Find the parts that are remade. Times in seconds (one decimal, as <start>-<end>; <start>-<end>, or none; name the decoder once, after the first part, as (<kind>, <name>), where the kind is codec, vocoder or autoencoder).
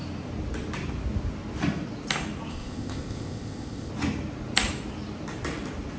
2.5-3.9 (codec, ZipCodec)